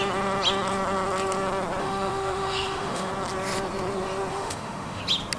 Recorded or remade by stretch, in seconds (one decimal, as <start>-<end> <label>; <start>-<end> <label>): 0.0-1.8 recorded; 1.8-3.1 remade; 3.1-4.3 recorded; 4.3-5.0 remade; 5.0-5.4 recorded